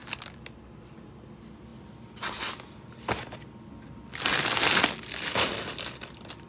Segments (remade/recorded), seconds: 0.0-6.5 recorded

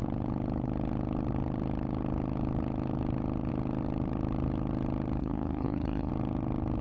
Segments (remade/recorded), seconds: 0.0-5.2 recorded; 5.2-6.1 remade; 6.1-6.8 recorded